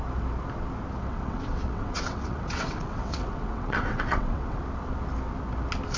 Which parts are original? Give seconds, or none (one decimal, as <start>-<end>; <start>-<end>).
0.0-1.0; 4.6-6.0